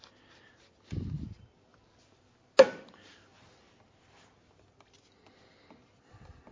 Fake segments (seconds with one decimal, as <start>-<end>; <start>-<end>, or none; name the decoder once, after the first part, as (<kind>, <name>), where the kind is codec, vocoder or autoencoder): none